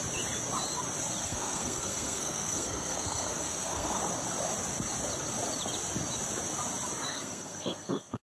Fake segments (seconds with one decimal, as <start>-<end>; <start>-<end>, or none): 1.2-4.0; 7.1-8.2